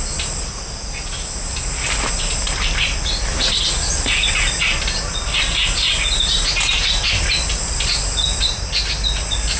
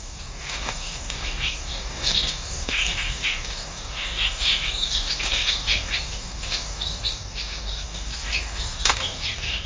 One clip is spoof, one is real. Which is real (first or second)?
first